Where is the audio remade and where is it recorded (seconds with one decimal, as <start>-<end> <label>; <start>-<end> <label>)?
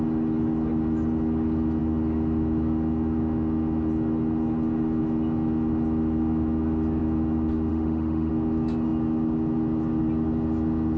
0.0-7.7 recorded; 7.7-8.3 remade; 8.3-11.0 recorded